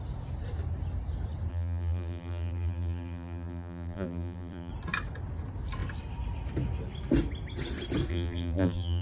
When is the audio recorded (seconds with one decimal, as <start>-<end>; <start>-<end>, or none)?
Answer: 0.0-1.5; 4.7-8.1